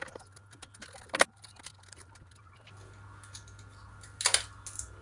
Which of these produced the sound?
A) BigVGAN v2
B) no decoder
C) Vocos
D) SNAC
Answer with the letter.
B